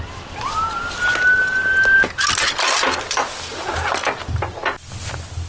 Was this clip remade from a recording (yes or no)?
no